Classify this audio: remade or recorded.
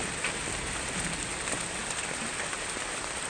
recorded